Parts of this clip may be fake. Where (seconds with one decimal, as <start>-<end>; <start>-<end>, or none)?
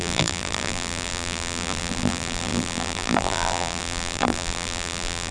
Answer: 0.0-5.3